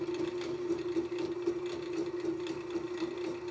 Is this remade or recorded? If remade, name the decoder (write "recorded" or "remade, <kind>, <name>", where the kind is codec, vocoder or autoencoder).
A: recorded